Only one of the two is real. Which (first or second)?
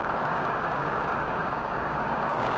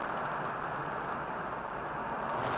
second